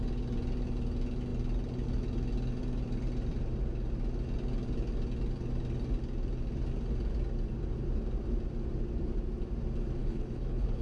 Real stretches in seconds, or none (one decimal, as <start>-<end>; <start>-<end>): 0.0-10.0